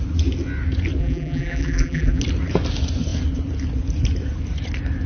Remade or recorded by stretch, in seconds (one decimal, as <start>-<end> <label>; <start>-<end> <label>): 0.0-1.0 recorded; 1.0-2.2 remade; 2.2-5.1 recorded